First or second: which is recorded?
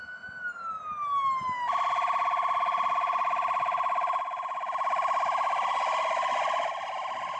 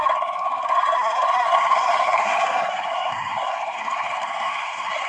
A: first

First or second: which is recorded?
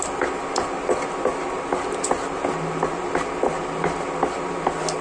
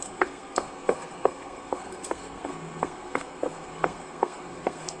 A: first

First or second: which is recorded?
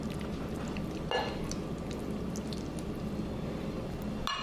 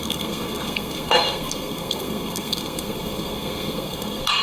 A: first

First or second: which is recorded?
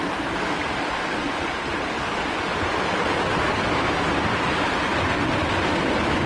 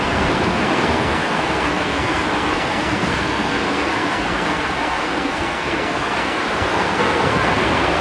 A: first